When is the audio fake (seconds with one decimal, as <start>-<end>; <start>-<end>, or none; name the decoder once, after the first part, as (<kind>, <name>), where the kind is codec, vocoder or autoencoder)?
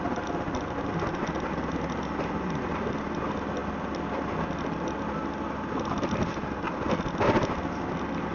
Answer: none